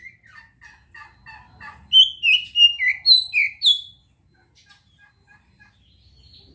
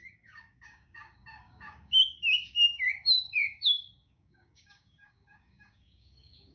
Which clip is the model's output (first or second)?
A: second